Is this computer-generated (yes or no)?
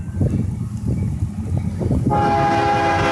no